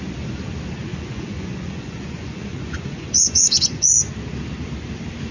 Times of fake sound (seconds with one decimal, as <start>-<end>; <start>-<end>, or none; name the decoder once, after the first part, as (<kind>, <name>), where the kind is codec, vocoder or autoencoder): 0.9-4.1 (vocoder, Vocos)